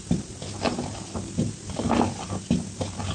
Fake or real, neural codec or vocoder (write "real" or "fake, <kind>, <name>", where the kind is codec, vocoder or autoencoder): real